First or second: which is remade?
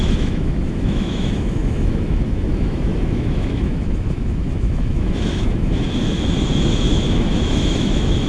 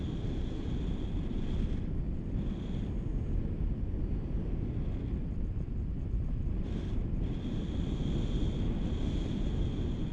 first